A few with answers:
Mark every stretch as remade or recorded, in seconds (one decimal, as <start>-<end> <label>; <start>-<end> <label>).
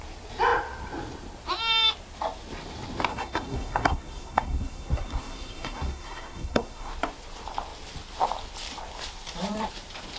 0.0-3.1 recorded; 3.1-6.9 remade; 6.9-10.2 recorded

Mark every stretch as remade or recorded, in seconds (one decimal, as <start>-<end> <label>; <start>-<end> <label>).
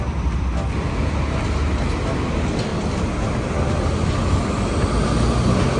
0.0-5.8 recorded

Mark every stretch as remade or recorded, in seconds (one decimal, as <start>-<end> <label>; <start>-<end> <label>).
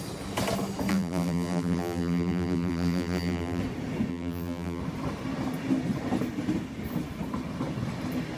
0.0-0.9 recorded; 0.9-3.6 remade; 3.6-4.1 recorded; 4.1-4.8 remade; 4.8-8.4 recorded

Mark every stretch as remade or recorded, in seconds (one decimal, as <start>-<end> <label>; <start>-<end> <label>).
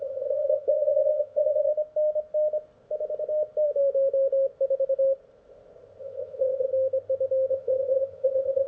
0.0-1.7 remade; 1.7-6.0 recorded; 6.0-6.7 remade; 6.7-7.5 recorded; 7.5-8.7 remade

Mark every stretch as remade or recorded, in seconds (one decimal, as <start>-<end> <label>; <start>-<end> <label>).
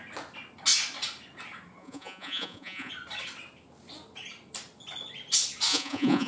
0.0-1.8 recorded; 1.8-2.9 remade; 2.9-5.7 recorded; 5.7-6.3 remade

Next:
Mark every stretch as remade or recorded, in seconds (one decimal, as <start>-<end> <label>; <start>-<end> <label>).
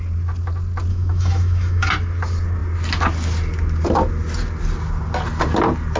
0.0-0.9 recorded; 0.9-1.9 remade; 1.9-6.0 recorded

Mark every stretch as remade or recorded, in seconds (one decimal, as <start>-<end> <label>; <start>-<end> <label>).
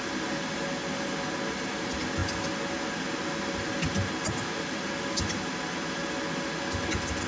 0.0-7.3 recorded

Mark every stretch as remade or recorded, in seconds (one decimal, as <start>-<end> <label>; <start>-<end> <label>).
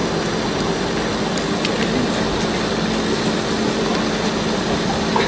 0.0-5.3 recorded